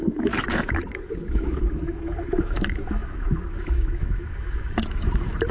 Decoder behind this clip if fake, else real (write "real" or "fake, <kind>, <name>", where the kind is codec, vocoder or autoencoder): fake, autoencoder, DAC-VAE